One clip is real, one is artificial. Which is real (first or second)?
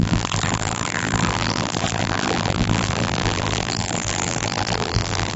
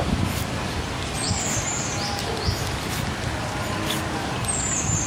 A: second